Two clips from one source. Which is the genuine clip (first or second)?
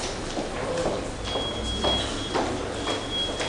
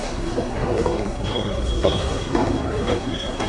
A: first